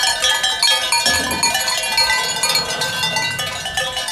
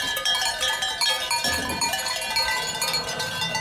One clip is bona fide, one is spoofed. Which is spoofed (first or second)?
second